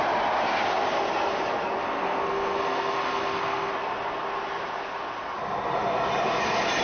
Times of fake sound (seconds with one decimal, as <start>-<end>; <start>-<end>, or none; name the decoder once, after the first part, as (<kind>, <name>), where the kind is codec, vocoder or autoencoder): 1.8-3.7 (codec, SNAC)